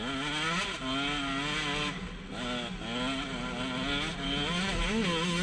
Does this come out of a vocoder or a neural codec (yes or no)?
no